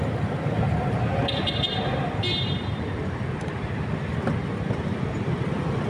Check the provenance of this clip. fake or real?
real